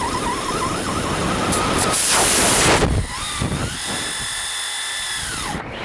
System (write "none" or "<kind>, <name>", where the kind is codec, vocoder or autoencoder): none